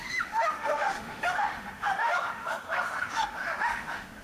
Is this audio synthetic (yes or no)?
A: yes